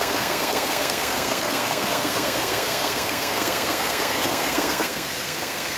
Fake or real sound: fake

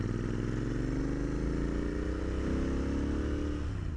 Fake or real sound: real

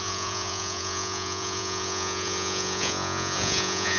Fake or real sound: fake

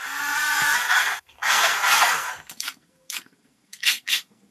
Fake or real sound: fake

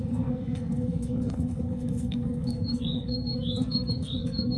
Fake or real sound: fake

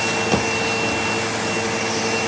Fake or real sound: real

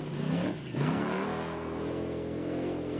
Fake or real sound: fake